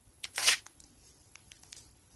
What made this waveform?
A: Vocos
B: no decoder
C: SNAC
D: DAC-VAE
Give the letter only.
A